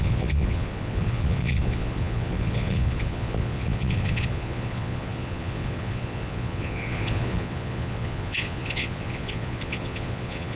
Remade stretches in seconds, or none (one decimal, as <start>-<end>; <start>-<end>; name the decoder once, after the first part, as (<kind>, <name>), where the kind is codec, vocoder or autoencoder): 0.0-10.5 (vocoder, Vocos)